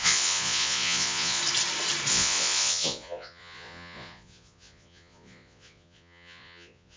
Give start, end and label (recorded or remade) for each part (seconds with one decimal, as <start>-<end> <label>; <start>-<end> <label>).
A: 0.0-1.4 remade; 1.4-2.1 recorded; 2.1-7.0 remade